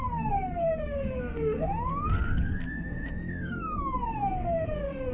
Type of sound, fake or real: fake